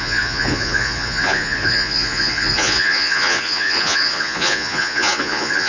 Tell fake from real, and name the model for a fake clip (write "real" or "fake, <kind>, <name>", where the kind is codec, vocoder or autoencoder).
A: fake, vocoder, Vocos